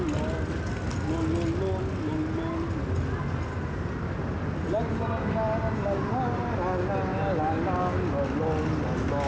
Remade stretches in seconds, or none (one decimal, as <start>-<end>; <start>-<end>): none